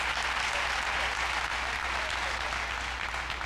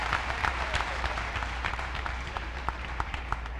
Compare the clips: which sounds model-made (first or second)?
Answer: second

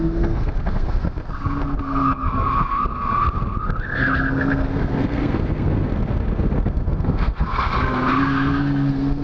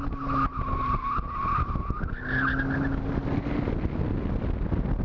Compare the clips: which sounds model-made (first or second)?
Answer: first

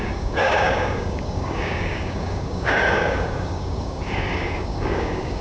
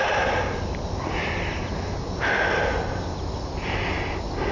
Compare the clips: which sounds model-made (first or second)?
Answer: first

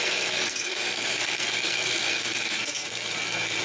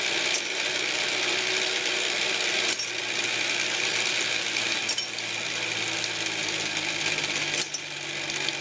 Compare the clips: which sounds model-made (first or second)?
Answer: first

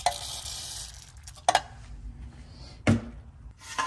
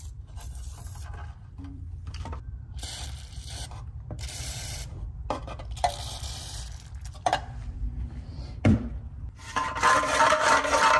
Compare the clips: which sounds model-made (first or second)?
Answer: second